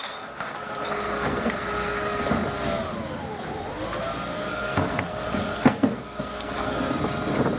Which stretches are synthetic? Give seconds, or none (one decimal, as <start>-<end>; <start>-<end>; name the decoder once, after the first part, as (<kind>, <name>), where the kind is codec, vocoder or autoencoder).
0.0-2.2 (codec, SNAC); 4.3-7.0